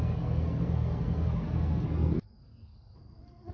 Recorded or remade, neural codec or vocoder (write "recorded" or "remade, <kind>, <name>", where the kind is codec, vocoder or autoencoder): remade, codec, SNAC